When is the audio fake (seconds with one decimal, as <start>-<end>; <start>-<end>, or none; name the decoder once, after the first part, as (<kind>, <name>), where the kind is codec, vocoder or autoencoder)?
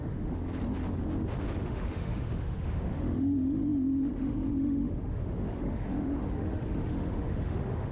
0.0-0.4 (autoencoder, DAC-VAE); 1.6-7.9